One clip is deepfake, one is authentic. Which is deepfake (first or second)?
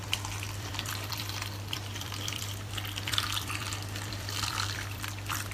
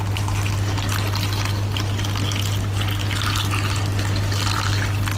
first